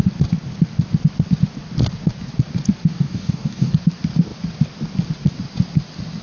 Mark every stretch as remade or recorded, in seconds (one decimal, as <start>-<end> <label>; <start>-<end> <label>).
0.0-2.9 recorded; 2.9-3.7 remade; 3.7-6.2 recorded